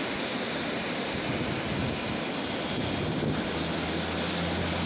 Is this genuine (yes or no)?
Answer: yes